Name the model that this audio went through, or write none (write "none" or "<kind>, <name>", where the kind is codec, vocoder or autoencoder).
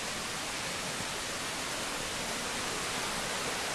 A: none